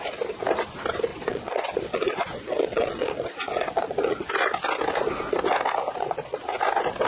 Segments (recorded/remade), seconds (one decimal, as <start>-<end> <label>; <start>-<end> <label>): 0.0-1.1 recorded; 1.1-4.3 remade; 4.3-5.8 recorded; 5.8-6.4 remade; 6.4-7.1 recorded

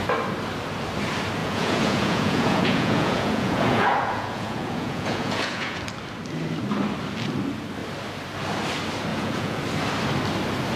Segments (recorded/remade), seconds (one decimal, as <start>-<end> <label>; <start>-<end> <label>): 0.0-1.4 recorded; 1.4-5.8 remade; 5.8-9.1 recorded; 9.1-9.6 remade; 9.6-10.8 recorded